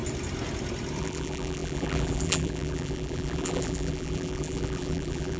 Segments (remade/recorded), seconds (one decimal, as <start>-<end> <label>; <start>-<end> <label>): 0.0-1.0 recorded; 1.0-5.4 remade